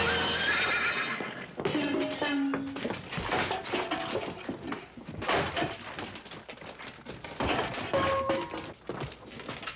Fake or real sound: real